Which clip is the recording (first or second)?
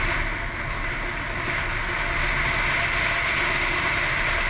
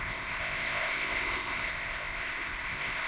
first